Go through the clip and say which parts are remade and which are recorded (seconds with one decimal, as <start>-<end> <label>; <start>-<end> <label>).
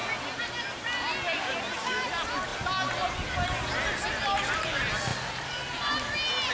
0.0-6.5 recorded